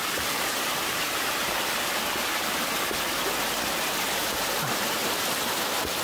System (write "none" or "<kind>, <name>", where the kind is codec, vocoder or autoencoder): none